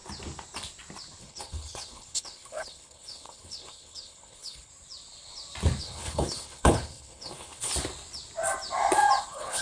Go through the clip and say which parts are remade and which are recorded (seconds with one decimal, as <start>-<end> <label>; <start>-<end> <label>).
0.0-1.2 recorded; 1.2-4.7 remade; 4.7-5.8 recorded; 5.8-7.7 remade; 7.7-9.2 recorded; 9.2-9.6 remade

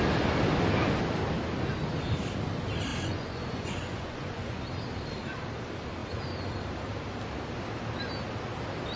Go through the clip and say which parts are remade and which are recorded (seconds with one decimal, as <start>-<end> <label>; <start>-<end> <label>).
0.0-2.9 recorded; 2.9-4.6 remade; 4.6-9.0 recorded